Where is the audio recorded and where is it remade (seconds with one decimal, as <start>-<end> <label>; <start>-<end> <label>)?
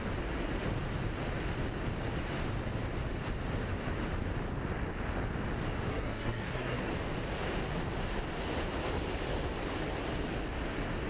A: 0.0-5.9 recorded; 5.9-6.9 remade; 6.9-11.1 recorded